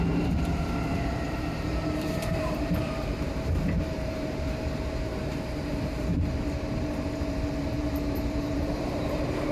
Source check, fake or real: fake